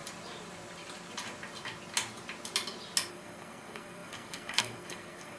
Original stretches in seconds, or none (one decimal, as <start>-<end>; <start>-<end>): 0.0-3.1